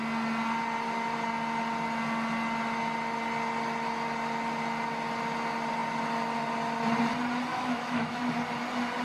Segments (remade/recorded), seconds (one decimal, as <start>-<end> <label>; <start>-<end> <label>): 0.0-7.5 recorded; 7.5-8.3 remade; 8.3-9.0 recorded